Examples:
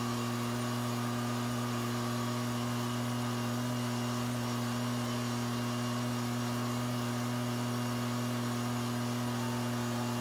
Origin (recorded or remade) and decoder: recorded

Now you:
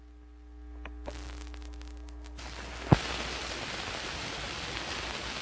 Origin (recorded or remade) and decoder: recorded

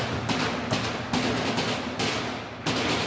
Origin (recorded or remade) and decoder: recorded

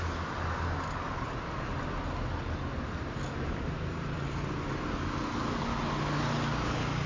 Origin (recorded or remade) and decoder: recorded